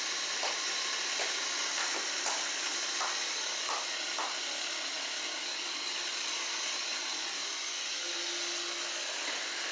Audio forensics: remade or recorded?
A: recorded